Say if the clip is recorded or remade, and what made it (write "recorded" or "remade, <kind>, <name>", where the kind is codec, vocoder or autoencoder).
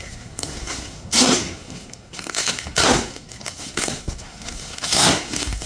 remade, codec, SNAC